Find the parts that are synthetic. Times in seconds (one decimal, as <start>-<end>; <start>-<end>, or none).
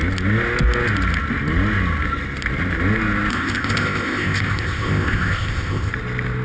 3.3-5.9